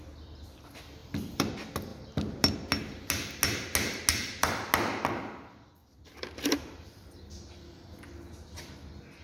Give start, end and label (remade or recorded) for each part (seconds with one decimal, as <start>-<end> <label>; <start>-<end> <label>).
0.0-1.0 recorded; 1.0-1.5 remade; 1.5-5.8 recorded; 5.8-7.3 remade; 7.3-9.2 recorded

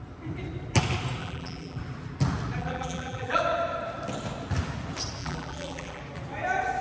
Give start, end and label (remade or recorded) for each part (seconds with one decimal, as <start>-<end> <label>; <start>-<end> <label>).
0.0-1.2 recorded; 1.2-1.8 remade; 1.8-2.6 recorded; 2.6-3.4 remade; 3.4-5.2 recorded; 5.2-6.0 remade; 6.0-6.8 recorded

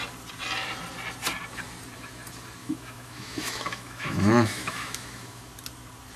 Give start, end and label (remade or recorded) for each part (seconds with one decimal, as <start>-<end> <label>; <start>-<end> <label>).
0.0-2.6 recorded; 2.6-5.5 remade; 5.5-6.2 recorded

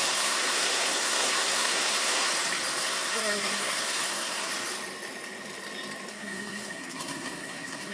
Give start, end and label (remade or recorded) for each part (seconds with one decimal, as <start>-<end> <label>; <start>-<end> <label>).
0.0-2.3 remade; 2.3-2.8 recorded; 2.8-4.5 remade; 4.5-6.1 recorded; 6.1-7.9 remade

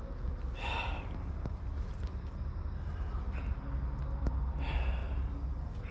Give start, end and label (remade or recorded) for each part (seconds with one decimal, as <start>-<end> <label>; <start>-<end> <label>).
0.0-5.9 recorded